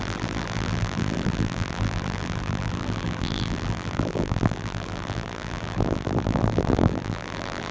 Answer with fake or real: fake